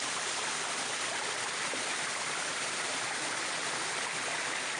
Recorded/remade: recorded